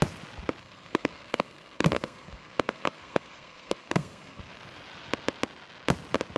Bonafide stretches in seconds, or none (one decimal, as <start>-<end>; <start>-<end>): 0.0-0.6; 4.4-6.4